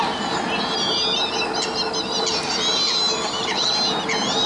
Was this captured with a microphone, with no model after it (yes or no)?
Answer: yes